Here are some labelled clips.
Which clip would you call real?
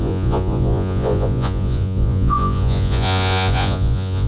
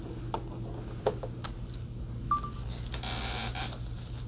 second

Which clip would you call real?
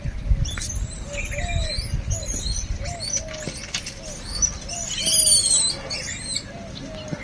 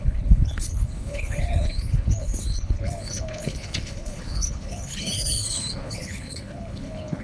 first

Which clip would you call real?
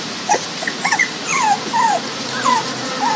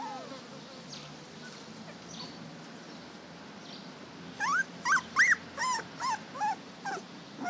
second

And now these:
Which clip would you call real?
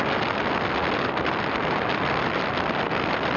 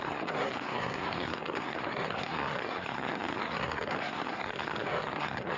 first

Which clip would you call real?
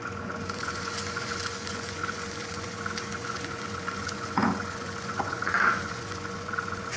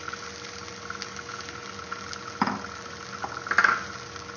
second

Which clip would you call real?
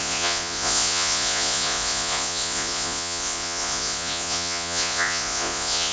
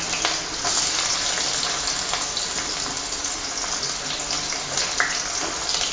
second